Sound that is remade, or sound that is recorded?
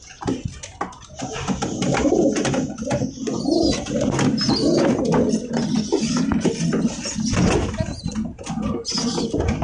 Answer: recorded